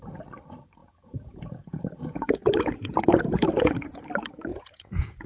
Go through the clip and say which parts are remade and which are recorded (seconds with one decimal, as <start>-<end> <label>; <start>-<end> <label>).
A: 0.0-0.8 recorded; 0.8-4.0 remade; 4.0-4.5 recorded; 4.5-5.3 remade